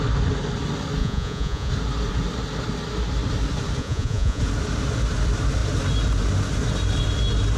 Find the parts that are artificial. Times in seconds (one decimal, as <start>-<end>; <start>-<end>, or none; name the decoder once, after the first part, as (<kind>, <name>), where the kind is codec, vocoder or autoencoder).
1.0-1.7 (vocoder, Vocos); 3.8-4.4